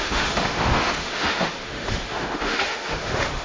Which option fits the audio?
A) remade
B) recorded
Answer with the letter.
A